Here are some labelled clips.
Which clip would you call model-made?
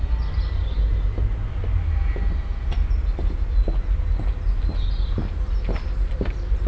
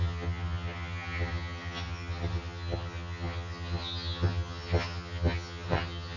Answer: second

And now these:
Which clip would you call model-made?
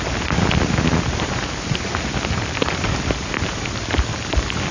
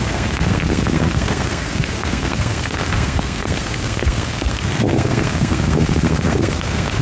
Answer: second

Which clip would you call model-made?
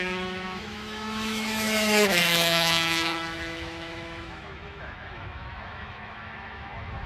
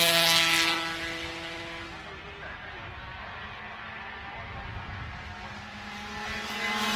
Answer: first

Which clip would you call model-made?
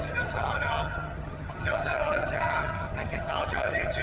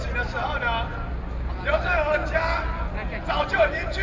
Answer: first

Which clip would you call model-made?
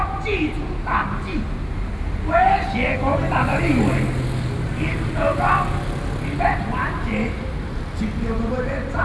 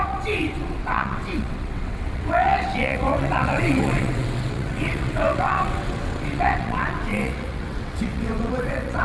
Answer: second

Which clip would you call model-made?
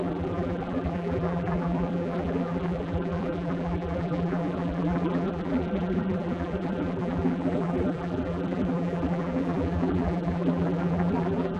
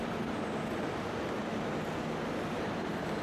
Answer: first